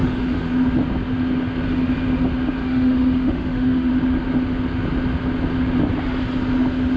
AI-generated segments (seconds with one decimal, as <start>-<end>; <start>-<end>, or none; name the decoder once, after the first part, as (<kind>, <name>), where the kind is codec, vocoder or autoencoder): 0.0-0.5 (autoencoder, DAC-VAE); 2.6-3.9